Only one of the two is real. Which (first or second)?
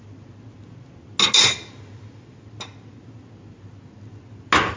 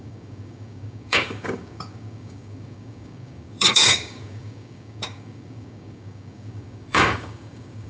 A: first